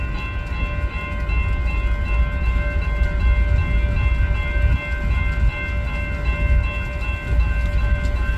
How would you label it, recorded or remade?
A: recorded